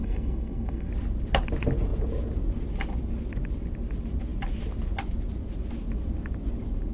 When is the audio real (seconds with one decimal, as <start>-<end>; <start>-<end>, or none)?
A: 0.9-6.9